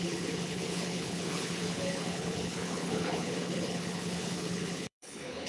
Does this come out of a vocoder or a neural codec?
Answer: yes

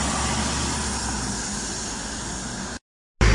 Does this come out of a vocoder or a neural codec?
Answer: no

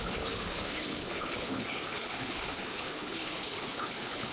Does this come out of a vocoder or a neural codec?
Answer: yes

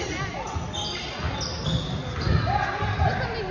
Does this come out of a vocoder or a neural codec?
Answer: no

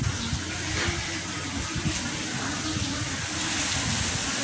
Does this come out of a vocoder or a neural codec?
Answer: no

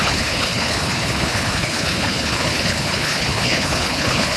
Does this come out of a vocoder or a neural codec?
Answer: yes